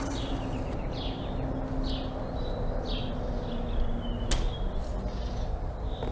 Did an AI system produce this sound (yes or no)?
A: no